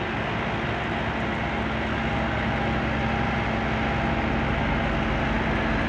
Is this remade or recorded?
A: recorded